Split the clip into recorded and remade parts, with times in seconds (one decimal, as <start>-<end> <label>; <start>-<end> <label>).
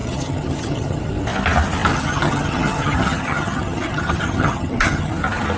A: 0.0-1.0 remade; 1.0-1.9 recorded; 1.9-5.1 remade; 5.1-5.6 recorded